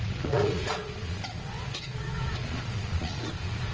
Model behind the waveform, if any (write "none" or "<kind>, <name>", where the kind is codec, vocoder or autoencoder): vocoder, Vocos